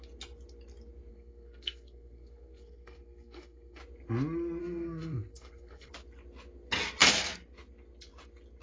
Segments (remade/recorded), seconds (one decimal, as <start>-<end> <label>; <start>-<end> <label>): 0.0-1.1 recorded; 1.1-3.8 remade; 3.8-4.6 recorded; 4.6-5.9 remade; 5.9-8.6 recorded